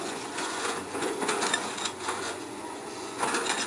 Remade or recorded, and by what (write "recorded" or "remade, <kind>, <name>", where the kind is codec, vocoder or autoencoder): remade, vocoder, Vocos